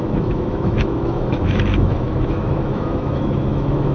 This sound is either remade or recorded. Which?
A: remade